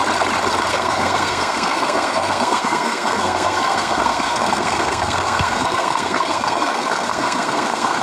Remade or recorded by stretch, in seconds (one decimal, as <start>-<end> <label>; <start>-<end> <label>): 0.0-0.7 recorded; 0.7-8.0 remade